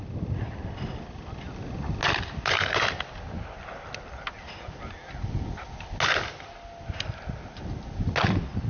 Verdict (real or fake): real